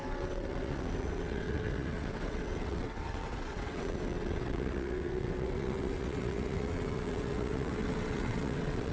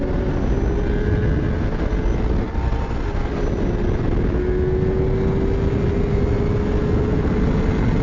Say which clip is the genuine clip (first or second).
second